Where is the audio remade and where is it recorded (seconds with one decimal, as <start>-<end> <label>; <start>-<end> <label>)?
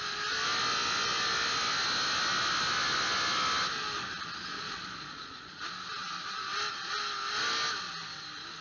0.0-4.5 recorded; 4.5-5.6 remade; 5.6-8.6 recorded